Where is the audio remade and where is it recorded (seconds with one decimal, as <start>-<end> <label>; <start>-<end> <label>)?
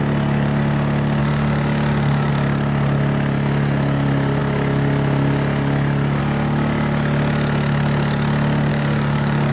0.0-1.2 recorded; 1.2-2.3 remade; 2.3-8.7 recorded; 8.7-9.5 remade